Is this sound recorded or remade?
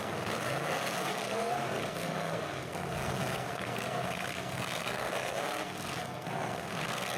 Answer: remade